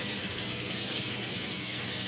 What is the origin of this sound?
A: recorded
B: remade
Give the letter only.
B